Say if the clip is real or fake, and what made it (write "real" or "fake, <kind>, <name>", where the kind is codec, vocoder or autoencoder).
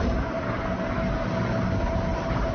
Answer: real